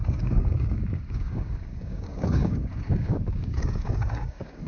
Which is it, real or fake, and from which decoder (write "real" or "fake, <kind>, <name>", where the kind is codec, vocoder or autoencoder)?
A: fake, codec, DAC